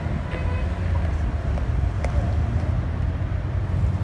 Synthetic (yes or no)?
no